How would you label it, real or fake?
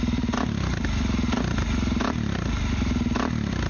fake